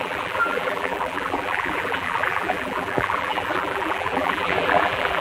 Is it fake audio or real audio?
fake